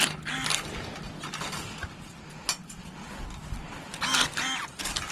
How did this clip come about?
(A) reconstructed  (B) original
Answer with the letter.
B